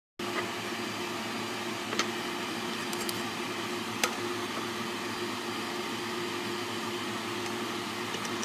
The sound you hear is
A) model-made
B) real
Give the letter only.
B